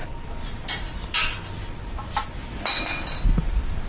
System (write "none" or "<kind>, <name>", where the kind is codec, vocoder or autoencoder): none